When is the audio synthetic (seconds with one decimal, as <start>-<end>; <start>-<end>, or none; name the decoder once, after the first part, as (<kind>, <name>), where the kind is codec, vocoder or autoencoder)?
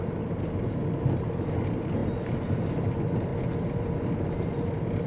3.3-5.1 (vocoder, BigVGAN v2)